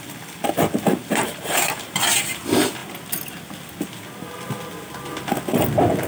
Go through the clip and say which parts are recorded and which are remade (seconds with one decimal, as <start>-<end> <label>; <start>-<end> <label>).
0.0-1.0 recorded; 1.0-2.4 remade; 2.4-6.1 recorded